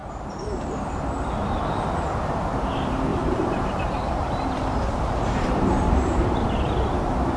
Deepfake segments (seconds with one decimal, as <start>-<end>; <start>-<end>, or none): 0.0-1.8; 3.1-6.7